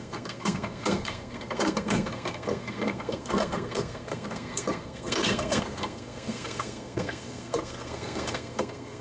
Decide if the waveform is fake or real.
fake